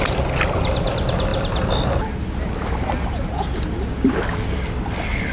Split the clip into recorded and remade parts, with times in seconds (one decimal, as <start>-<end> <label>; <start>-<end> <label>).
0.0-5.3 recorded